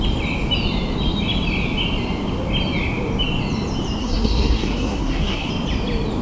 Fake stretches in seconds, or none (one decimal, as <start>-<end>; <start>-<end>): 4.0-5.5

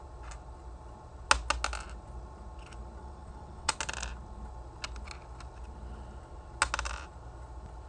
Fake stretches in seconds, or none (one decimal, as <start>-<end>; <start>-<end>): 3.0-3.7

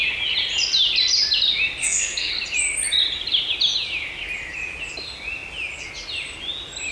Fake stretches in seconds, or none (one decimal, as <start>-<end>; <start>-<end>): 1.8-2.3

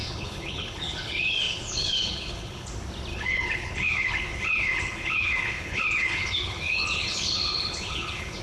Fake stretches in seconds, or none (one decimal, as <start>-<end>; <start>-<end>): 0.0-2.7; 3.1-8.4

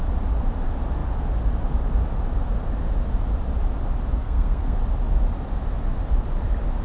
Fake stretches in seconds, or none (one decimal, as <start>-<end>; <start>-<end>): 4.1-4.8

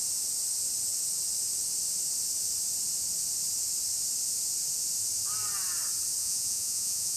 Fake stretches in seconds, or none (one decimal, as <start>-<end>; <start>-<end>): 6.2-7.2

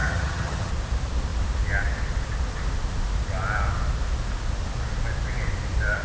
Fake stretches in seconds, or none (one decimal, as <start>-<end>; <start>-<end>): 0.0-0.7

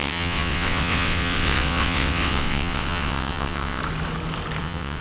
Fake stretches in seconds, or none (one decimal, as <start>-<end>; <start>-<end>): 0.0-3.8; 4.6-5.0